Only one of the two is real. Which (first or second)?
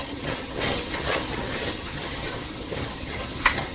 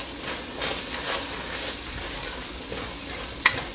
second